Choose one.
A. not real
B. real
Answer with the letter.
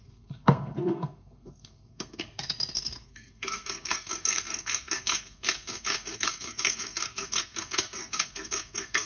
A